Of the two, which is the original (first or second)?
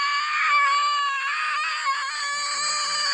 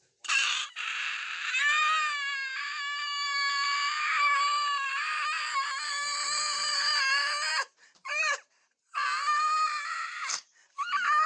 first